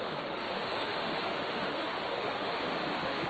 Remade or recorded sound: remade